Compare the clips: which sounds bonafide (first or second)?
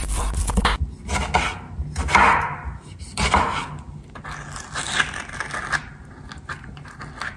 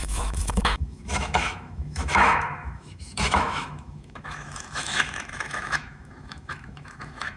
first